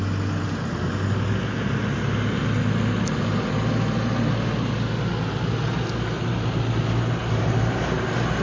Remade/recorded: recorded